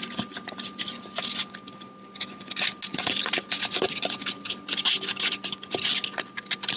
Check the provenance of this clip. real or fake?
real